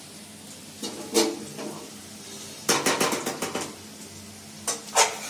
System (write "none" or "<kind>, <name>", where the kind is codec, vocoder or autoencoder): none